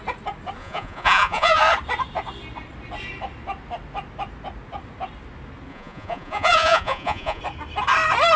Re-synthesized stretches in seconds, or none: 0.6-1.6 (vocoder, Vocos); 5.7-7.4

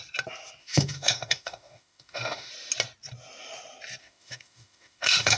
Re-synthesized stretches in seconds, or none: 0.6-2.5 (autoencoder, DAC-VAE); 4.0-5.4

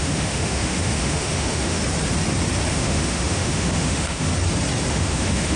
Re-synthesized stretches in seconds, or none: 0.0-1.8 (autoencoder, DAC-VAE); 2.7-4.3; 4.9-5.6